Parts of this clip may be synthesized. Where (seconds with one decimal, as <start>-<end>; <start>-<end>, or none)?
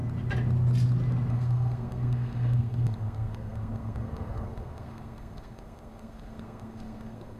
1.3-7.4